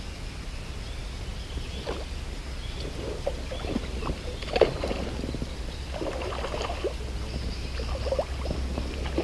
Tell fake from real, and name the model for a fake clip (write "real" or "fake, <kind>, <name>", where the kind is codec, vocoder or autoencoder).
real